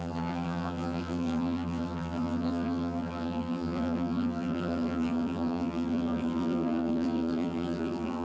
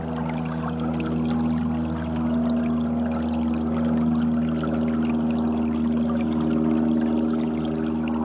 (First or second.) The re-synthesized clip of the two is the first